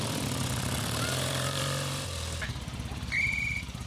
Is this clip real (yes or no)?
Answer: no